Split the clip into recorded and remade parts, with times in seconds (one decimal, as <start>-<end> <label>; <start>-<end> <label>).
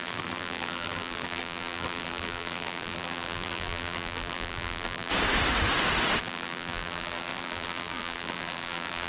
0.0-5.1 remade; 5.1-6.2 recorded; 6.2-9.1 remade